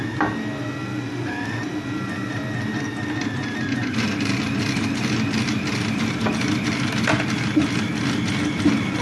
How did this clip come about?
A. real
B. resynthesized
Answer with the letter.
A